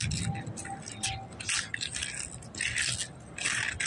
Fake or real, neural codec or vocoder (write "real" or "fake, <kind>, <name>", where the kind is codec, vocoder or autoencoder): real